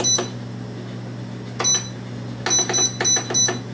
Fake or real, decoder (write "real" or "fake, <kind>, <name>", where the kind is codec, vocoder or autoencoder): real